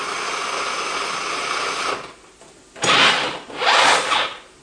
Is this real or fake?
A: real